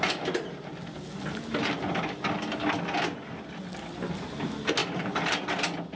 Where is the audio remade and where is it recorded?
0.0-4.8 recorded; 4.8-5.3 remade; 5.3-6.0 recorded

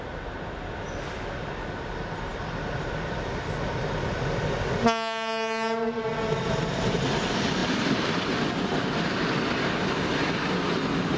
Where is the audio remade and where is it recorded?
0.0-7.6 recorded; 7.6-8.5 remade; 8.5-11.2 recorded

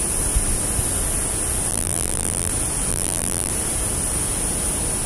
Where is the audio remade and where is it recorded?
0.0-1.7 recorded; 1.7-2.5 remade; 2.5-2.9 recorded; 2.9-3.5 remade; 3.5-5.1 recorded

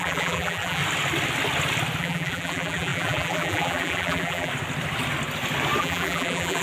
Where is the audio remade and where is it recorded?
0.0-0.8 remade; 0.8-2.0 recorded; 2.0-4.5 remade; 4.5-5.8 recorded; 5.8-6.6 remade

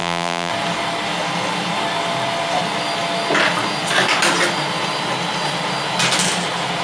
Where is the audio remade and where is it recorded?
0.0-0.5 remade; 0.5-6.8 recorded